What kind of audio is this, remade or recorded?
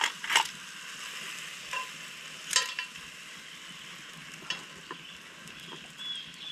recorded